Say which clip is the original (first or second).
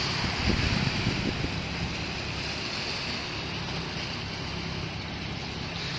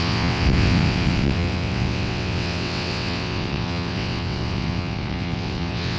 first